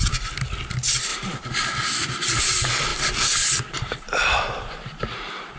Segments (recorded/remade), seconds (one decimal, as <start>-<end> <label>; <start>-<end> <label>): 0.0-1.1 recorded; 1.1-2.4 remade; 2.4-2.9 recorded; 2.9-4.6 remade; 4.6-5.6 recorded